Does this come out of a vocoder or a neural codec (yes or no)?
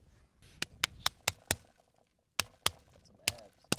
no